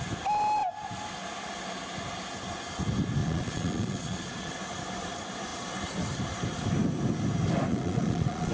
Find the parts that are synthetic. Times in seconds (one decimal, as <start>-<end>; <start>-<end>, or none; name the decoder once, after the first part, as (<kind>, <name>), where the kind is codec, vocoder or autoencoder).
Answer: 3.2-4.5 (vocoder, Vocos); 7.7-8.5